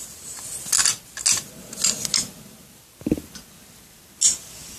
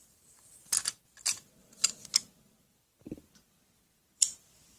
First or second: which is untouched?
first